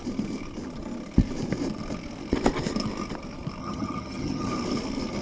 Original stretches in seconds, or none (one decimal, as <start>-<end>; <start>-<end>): 0.0-3.6; 4.5-5.2